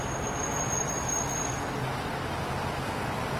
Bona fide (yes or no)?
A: yes